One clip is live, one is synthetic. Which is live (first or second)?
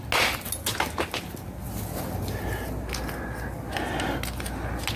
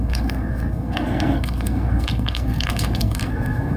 first